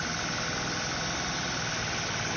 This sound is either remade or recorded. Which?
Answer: recorded